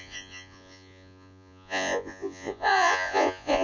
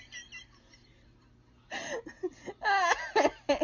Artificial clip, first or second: first